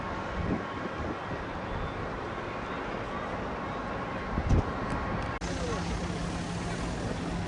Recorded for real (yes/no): yes